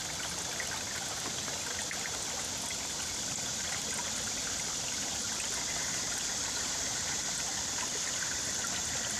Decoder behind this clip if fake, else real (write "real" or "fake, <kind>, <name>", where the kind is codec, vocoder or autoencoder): real